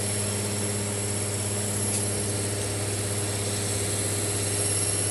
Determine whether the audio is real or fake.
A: real